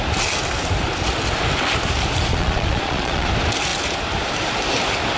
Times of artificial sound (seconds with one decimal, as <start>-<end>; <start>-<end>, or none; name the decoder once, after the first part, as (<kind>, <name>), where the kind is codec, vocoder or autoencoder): 2.3-3.3 (vocoder, Vocos)